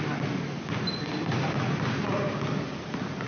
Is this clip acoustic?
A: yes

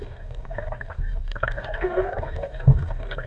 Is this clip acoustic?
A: no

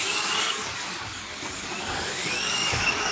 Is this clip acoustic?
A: no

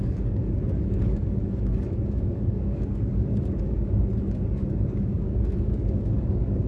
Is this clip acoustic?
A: no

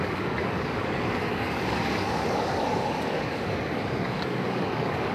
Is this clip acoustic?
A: no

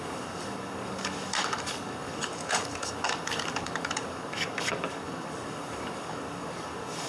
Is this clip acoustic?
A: no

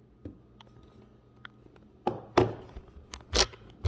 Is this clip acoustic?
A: yes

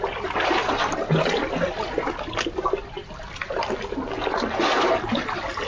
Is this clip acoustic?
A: yes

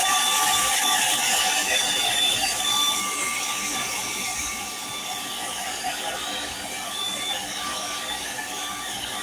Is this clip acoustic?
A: no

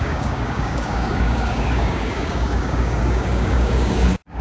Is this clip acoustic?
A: no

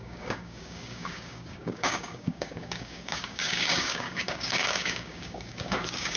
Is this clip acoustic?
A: no